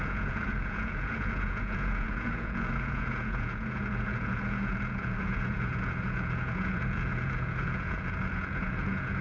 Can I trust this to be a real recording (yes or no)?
no